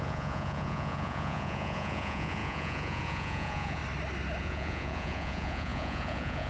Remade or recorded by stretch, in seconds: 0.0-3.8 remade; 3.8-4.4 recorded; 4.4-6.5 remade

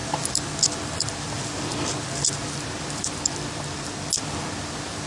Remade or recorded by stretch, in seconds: 0.0-5.1 recorded

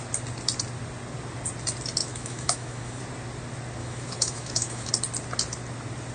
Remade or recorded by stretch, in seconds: 0.0-2.0 recorded; 2.0-3.0 remade; 3.0-3.8 recorded; 3.8-4.9 remade; 4.9-6.1 recorded